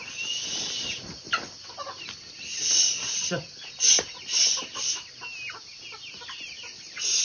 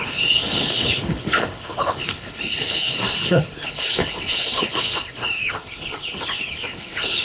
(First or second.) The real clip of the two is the first